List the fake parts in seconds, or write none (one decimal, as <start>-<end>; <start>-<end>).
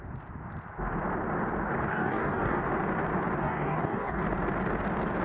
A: 1.9-2.6; 3.4-4.2